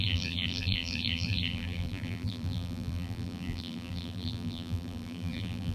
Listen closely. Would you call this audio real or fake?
fake